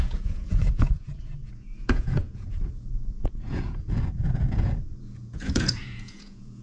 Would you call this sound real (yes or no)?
no